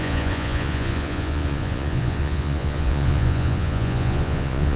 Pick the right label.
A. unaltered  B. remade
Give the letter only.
B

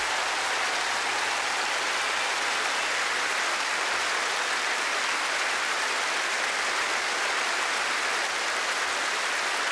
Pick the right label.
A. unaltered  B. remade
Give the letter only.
A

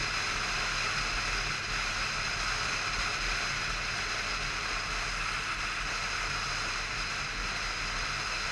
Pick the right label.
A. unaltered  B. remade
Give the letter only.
A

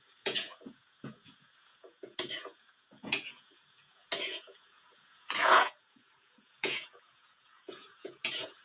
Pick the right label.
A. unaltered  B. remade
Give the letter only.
B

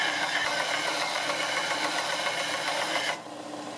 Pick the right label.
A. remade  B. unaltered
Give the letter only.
B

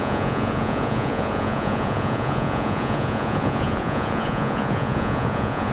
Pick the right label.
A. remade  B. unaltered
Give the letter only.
A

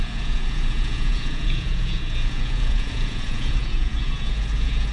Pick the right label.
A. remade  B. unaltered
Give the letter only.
A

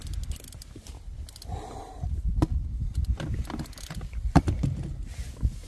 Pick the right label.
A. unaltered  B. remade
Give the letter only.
A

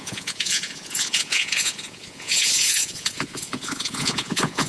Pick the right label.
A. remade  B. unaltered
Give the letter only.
A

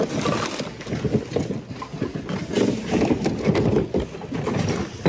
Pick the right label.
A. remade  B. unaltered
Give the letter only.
B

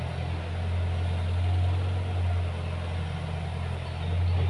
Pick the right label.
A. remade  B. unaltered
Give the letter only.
B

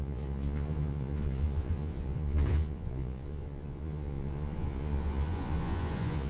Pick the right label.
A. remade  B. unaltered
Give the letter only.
A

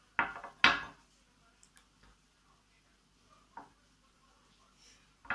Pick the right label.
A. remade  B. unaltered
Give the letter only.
B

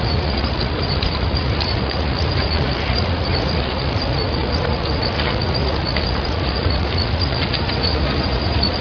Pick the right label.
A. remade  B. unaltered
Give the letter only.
A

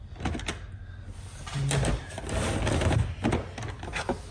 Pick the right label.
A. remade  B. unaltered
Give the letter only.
B